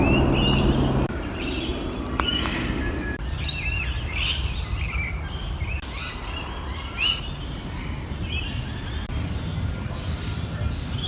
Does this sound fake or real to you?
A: real